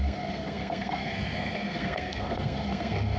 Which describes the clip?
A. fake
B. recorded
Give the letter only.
A